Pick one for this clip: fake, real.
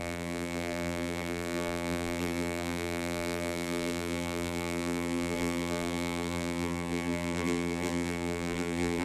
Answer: fake